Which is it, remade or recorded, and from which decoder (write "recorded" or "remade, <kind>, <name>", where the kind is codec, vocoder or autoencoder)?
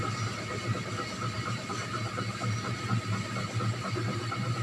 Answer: recorded